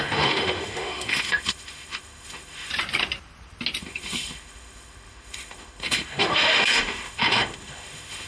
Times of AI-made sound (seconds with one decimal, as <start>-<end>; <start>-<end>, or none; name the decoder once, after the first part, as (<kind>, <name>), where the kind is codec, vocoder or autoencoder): 0.0-2.7 (autoencoder, DAC-VAE); 3.8-8.3